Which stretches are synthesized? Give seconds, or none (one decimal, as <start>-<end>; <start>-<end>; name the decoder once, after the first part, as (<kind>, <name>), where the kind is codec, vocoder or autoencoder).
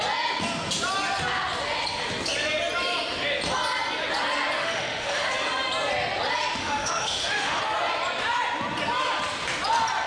4.6-5.3 (autoencoder, DAC-VAE); 6.6-7.6